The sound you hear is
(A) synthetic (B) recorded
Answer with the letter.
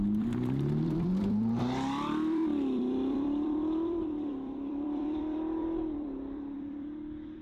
A